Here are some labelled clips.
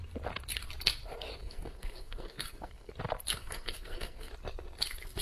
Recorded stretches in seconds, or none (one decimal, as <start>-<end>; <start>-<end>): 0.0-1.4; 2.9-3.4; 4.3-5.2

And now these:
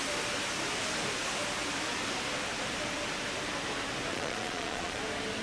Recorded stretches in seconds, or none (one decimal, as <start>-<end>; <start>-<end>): 0.0-4.1; 5.0-5.4

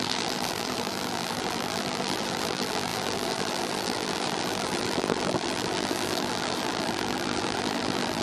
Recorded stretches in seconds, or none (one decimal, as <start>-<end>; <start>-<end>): none